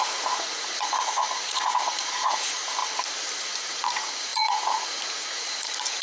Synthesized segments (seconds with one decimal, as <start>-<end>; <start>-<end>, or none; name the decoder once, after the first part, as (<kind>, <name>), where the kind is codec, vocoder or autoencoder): 0.0-2.8 (vocoder, Vocos); 3.4-6.0